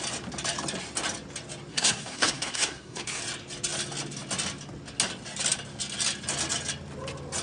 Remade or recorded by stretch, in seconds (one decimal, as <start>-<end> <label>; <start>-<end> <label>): 0.0-1.7 recorded; 1.7-3.2 remade; 3.2-7.4 recorded